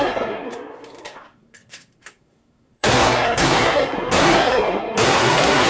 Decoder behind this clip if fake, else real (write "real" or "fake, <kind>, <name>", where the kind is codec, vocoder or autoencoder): fake, codec, SNAC